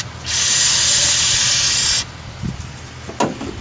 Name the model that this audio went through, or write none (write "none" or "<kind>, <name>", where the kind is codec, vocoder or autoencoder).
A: none